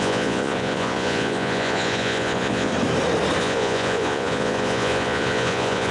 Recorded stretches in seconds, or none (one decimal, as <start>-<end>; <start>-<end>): 2.7-3.4

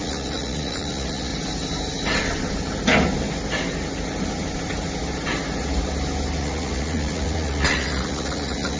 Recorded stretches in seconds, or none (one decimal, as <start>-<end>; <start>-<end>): 1.3-6.4

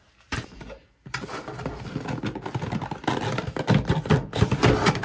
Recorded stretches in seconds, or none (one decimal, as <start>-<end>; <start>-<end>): 0.0-5.0